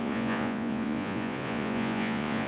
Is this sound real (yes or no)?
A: no